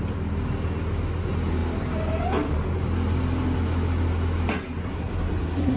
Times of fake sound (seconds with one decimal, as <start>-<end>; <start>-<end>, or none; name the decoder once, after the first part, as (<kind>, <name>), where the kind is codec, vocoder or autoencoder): 4.8-5.8 (codec, SNAC)